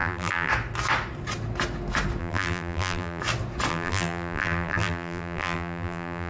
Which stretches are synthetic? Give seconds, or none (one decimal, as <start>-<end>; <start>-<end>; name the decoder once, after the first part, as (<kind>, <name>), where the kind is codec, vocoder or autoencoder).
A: 0.0-0.5 (vocoder, BigVGAN v2); 2.2-3.2; 3.7-6.3